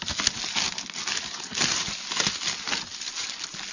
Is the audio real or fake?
real